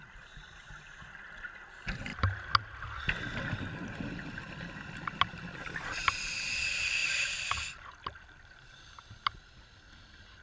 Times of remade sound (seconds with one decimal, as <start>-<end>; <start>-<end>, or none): none